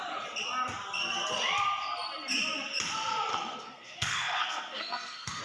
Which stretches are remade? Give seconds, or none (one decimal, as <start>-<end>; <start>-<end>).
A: 3.3-5.4